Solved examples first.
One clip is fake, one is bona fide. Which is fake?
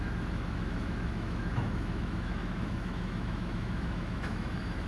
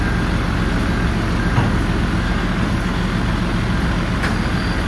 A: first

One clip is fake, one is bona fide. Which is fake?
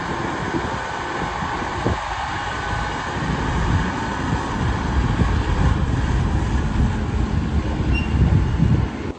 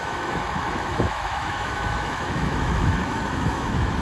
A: second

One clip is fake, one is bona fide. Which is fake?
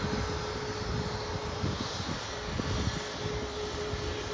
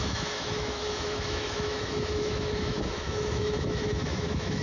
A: second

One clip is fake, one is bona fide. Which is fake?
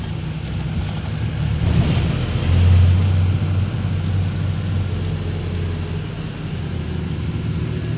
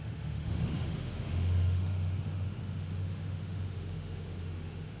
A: second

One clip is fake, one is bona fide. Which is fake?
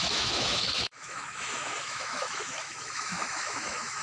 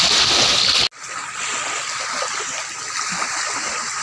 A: first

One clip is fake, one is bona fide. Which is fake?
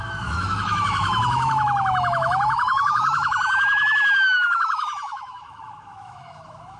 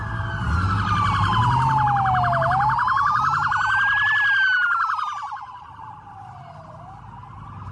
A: first